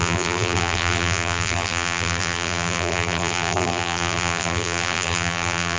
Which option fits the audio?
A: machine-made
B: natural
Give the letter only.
A